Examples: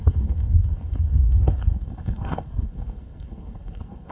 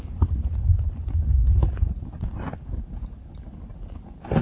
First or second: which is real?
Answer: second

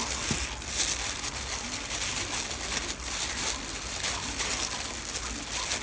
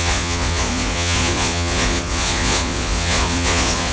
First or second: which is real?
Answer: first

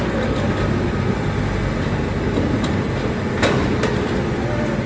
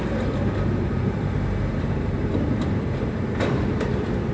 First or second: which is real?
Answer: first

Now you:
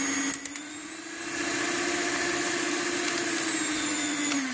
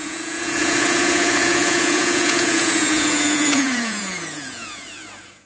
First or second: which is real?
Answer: first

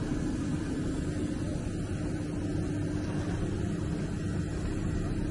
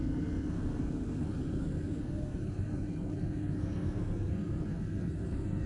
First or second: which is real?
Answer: first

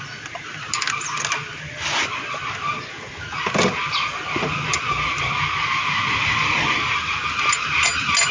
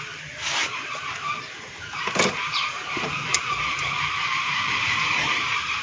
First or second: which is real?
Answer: first